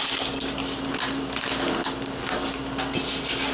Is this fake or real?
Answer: real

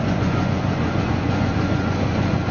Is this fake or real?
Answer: fake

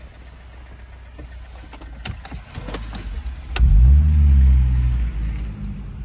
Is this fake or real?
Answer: real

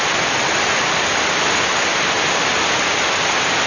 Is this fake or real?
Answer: real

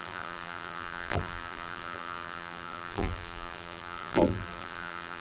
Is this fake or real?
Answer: fake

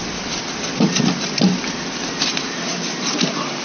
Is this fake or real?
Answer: fake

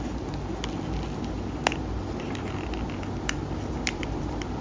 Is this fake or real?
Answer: real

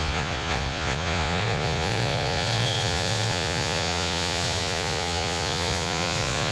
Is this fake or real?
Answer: fake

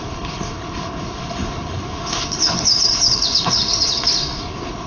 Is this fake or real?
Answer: fake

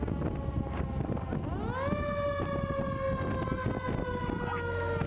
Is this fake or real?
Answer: real